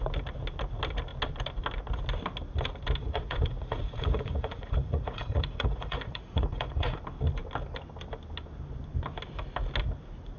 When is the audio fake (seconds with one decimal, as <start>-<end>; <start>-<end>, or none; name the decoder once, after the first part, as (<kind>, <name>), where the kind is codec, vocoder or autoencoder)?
3.0-7.0 (vocoder, Vocos)